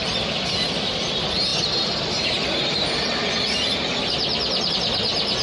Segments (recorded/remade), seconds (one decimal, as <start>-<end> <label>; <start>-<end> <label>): 0.0-5.4 recorded